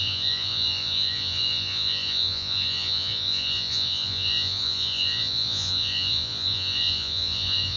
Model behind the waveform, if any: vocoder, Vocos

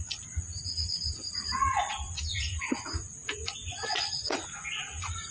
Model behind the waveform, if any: vocoder, Vocos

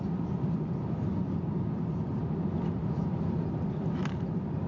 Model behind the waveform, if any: none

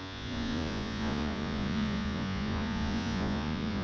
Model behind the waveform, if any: vocoder, Vocos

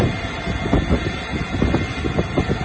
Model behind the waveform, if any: none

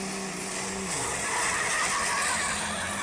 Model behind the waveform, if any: none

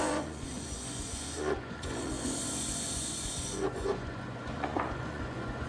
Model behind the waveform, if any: vocoder, Vocos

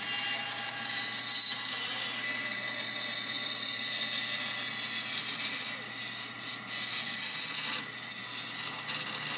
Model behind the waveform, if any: none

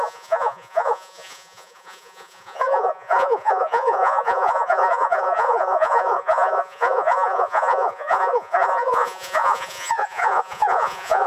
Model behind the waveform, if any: vocoder, Vocos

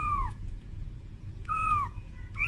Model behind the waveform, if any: vocoder, Vocos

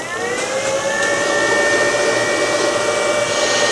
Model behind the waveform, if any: none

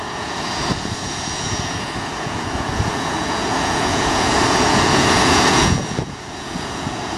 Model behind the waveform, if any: vocoder, Vocos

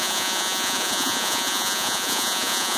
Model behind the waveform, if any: vocoder, Vocos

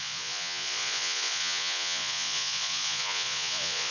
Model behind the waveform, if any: vocoder, Vocos